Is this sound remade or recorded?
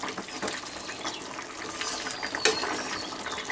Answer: recorded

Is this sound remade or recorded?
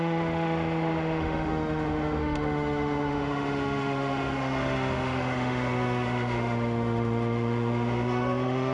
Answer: remade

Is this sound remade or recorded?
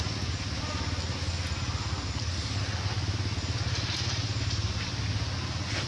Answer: recorded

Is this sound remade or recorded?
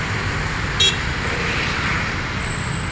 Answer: recorded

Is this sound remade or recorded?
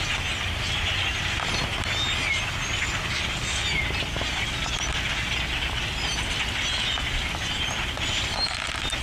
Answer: recorded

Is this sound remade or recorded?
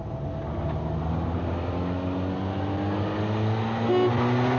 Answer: recorded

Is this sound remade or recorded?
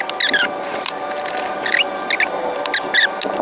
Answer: recorded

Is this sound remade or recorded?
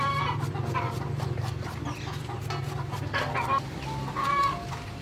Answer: recorded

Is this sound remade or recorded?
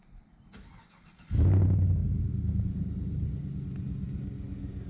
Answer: recorded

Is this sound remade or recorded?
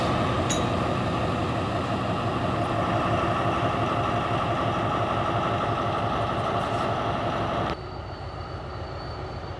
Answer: recorded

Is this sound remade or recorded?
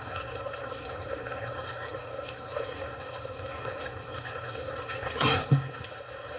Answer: remade